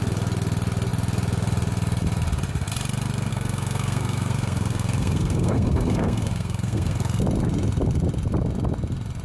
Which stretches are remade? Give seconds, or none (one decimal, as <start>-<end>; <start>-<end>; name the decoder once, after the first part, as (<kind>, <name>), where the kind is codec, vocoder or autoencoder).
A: 3.3-7.2 (codec, SNAC)